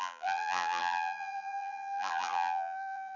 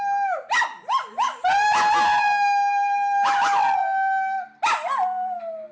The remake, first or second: first